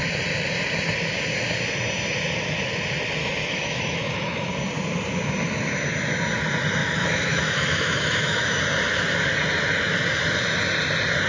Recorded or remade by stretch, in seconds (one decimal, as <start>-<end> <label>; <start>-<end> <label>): 0.0-3.2 recorded; 3.2-4.5 remade; 4.5-6.8 recorded; 6.8-8.6 remade; 8.6-11.3 recorded

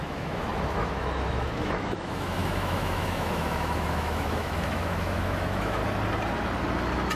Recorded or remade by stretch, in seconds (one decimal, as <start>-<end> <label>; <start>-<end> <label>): 0.0-5.8 remade; 5.8-7.2 recorded